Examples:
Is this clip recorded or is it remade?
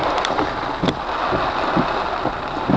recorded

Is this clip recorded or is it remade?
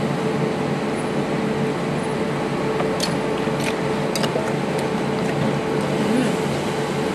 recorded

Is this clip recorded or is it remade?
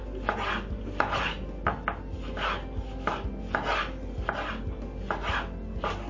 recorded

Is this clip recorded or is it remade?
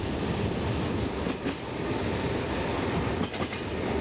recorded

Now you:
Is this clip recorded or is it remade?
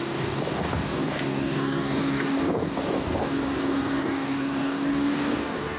remade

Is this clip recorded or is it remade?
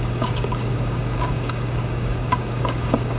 remade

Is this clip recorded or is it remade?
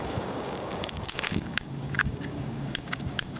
remade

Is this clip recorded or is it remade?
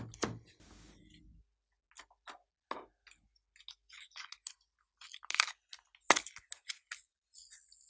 recorded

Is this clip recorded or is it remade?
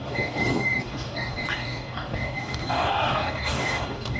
remade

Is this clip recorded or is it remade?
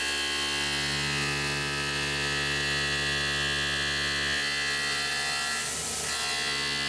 recorded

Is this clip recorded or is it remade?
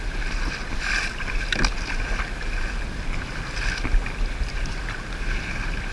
recorded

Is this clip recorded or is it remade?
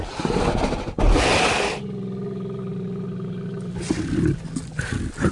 recorded